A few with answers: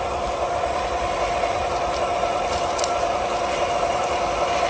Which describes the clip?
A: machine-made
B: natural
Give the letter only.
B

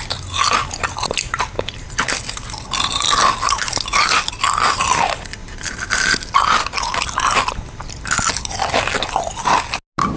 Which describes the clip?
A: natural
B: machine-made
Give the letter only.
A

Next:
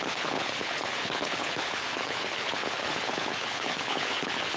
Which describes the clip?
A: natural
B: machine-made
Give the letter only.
B